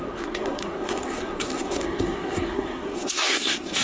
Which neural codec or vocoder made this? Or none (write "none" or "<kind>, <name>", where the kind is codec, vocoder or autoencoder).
codec, SNAC